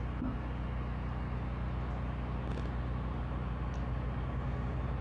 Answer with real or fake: real